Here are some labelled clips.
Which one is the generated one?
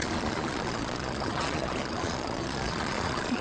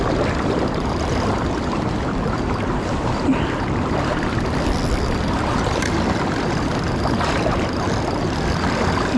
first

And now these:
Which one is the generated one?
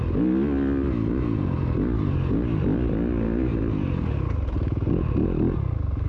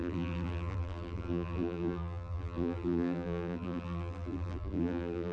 second